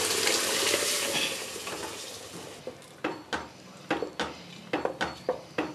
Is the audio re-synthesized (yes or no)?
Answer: no